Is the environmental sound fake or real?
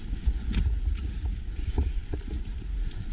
fake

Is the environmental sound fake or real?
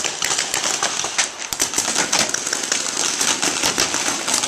real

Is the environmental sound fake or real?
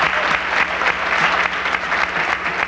real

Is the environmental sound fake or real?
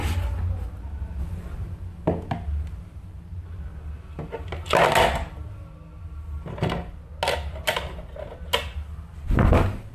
real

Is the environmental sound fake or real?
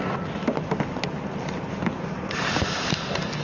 real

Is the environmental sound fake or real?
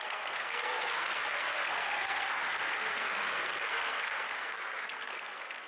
fake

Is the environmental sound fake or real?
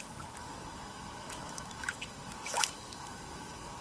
fake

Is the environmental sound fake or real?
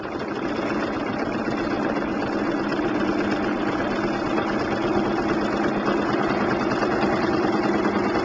real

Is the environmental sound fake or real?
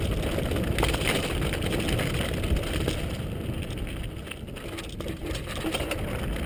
real